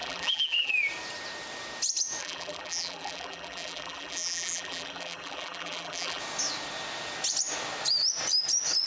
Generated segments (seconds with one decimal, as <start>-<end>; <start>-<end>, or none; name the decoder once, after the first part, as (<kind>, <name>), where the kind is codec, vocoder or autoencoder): 0.0-0.7 (vocoder, BigVGAN v2); 2.2-6.2